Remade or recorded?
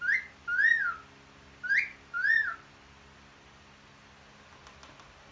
recorded